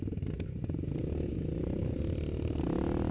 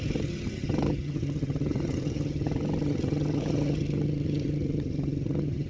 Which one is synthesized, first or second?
second